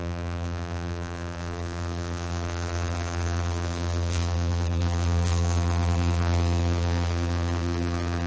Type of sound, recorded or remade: remade